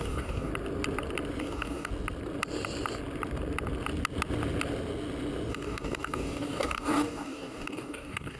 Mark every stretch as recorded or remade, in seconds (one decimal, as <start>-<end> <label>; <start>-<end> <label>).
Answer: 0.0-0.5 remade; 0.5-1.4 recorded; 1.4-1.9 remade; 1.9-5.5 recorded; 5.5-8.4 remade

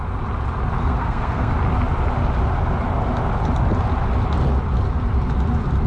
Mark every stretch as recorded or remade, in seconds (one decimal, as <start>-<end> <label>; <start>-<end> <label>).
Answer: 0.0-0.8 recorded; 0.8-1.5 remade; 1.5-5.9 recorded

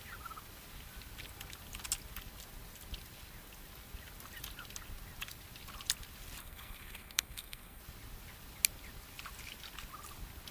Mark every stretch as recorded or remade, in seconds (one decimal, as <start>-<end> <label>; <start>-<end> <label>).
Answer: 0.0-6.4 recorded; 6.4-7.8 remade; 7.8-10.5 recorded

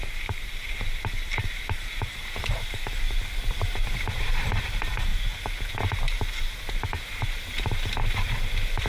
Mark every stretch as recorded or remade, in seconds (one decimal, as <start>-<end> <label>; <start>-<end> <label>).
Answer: 0.0-5.1 remade; 5.1-6.7 recorded; 6.7-8.9 remade

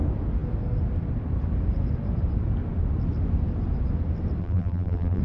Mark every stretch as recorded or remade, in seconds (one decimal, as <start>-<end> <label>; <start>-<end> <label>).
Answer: 0.0-4.4 recorded; 4.4-5.2 remade

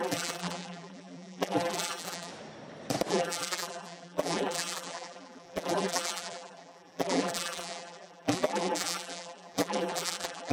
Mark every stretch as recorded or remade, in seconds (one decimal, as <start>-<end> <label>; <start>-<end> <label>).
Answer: 0.0-2.3 remade; 2.3-3.1 recorded; 3.1-10.5 remade

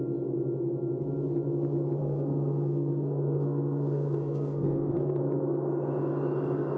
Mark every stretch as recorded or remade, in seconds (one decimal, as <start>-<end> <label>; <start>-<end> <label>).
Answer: 0.0-2.0 recorded; 2.0-5.2 remade; 5.2-6.8 recorded